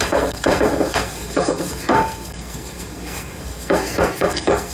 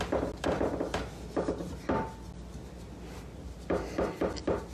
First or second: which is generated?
first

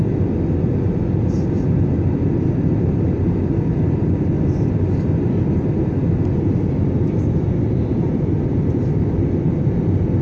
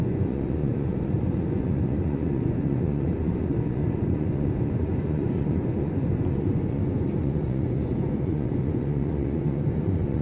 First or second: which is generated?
second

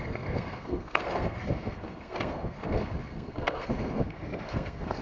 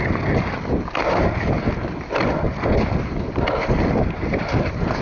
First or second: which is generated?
first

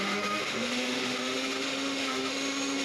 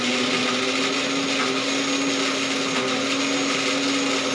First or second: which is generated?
first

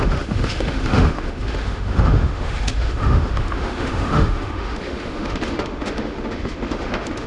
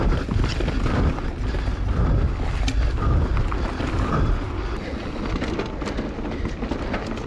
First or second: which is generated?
first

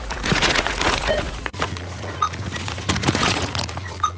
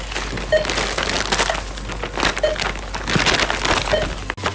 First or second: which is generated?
first